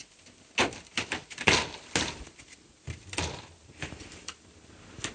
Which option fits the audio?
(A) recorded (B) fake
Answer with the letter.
A